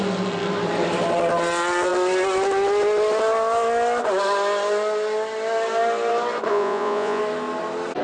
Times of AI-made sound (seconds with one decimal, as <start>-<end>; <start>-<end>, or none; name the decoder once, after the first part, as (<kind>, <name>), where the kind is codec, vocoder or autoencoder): 6.5-7.2 (vocoder, Vocos)